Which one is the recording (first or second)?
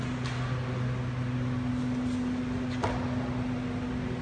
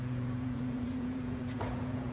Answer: first